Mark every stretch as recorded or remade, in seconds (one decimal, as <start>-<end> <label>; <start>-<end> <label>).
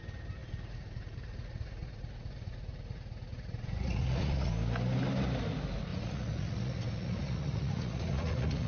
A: 0.0-0.4 recorded; 0.4-4.5 remade; 4.5-5.9 recorded; 5.9-8.7 remade